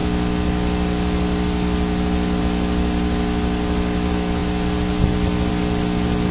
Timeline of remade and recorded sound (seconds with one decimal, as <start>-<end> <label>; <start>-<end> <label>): 0.0-6.3 recorded